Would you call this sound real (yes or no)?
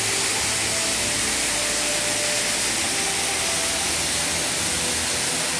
yes